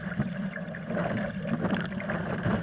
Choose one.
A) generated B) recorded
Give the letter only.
B